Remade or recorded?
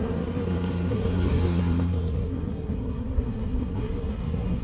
remade